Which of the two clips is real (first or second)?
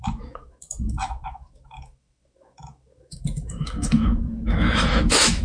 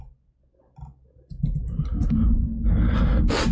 second